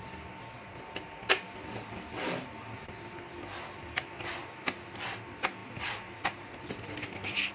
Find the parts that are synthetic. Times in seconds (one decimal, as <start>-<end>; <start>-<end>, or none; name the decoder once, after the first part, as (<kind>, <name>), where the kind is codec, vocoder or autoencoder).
none